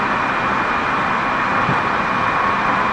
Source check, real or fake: real